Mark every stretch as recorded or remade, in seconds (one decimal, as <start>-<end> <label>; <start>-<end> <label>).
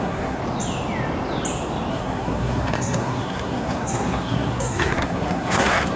0.0-0.4 remade; 0.4-1.9 recorded; 1.9-6.0 remade